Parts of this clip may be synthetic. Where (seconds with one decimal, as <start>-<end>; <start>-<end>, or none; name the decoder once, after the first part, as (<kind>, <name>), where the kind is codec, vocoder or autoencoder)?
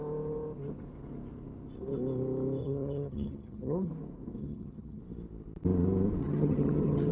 2.6-3.9 (vocoder, HiFi-GAN); 4.4-5.0; 6.2-7.1